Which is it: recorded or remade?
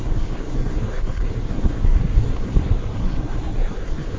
remade